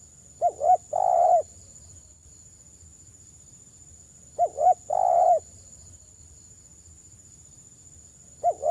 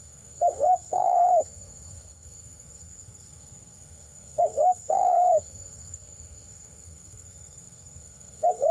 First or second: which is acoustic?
first